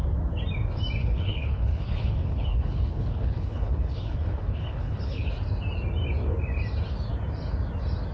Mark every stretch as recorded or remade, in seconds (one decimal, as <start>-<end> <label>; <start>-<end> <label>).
0.0-1.0 recorded; 1.0-5.3 remade; 5.3-8.1 recorded

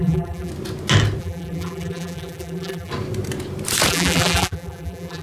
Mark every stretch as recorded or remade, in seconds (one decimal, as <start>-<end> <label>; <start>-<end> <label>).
0.0-0.5 remade; 0.5-1.2 recorded; 1.2-2.9 remade; 2.9-3.9 recorded; 3.9-5.2 remade

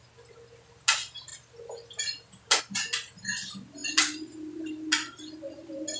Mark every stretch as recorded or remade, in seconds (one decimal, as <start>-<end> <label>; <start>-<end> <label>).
0.0-6.0 recorded

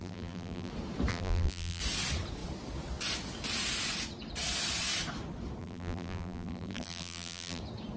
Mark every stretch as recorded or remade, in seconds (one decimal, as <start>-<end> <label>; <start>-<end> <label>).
0.0-0.7 remade; 0.7-1.1 recorded; 1.1-1.8 remade; 1.8-5.6 recorded; 5.6-7.6 remade; 7.6-8.0 recorded

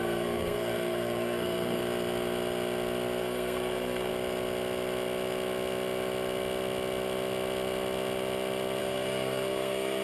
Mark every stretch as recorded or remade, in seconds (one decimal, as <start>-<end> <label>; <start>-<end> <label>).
0.0-1.8 remade; 1.8-3.2 recorded; 3.2-4.1 remade; 4.1-8.8 recorded; 8.8-10.0 remade

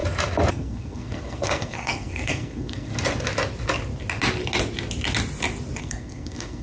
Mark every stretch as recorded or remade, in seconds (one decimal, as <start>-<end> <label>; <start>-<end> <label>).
0.0-0.5 recorded; 0.5-2.9 remade; 2.9-5.8 recorded; 5.8-6.6 remade